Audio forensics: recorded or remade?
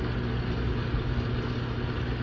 recorded